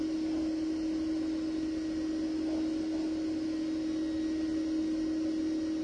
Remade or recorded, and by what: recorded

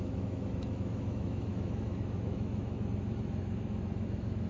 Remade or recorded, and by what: remade, autoencoder, DAC-VAE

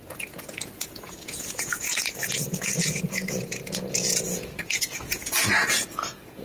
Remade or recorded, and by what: remade, vocoder, Vocos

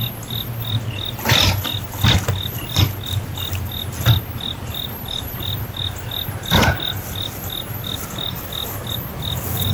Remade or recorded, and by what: recorded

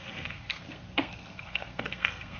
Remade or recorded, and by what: remade, codec, SNAC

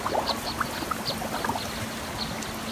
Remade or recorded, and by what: recorded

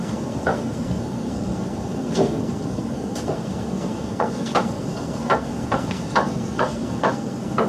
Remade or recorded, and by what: remade, codec, SNAC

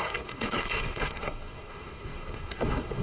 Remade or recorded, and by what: remade, codec, SNAC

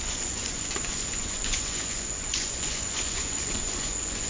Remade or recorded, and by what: remade, vocoder, Vocos